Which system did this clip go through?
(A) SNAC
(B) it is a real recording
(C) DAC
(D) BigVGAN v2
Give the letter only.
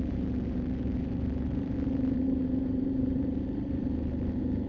D